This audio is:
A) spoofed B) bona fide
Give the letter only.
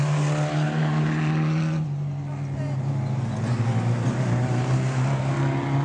B